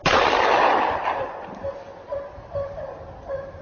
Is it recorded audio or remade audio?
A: recorded